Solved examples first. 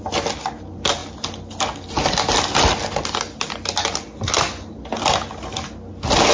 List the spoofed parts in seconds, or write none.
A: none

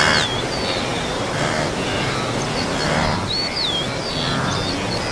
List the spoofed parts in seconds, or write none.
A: none

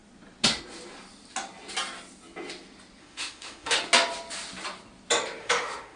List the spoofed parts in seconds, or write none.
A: 3.0-3.8; 5.4-6.0